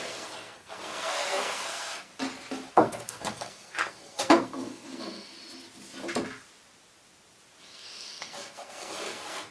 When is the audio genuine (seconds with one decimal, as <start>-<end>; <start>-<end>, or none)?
2.1-2.7; 5.3-7.6